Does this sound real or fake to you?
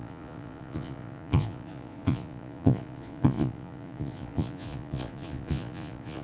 fake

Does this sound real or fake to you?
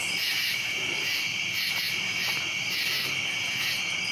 real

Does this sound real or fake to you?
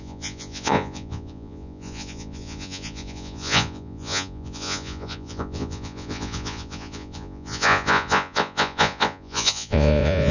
fake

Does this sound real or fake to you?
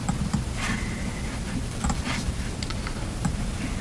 real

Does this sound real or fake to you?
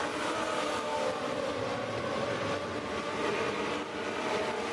real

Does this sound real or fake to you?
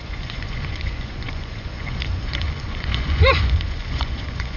fake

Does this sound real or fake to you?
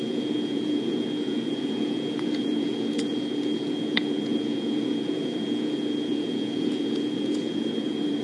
fake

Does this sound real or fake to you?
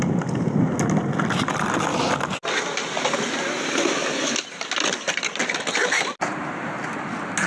real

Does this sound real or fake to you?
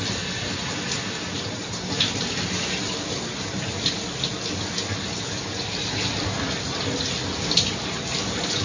real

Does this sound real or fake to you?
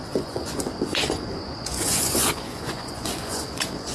fake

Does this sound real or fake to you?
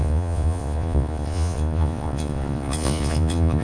fake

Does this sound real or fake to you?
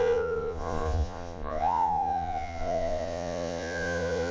fake